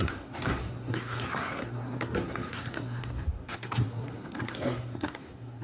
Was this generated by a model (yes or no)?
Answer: yes